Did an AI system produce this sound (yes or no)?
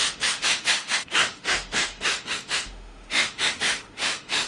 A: yes